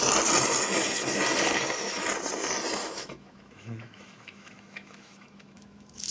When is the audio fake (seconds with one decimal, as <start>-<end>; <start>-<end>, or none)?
2.8-6.1